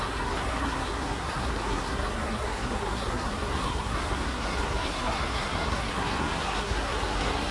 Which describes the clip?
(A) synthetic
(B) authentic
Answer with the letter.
A